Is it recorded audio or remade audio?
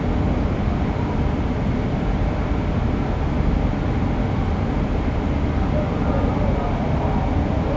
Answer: recorded